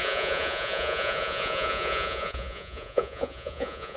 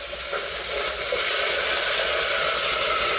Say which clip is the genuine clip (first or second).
second